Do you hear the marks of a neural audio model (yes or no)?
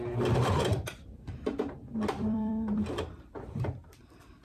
yes